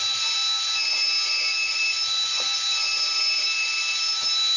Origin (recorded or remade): recorded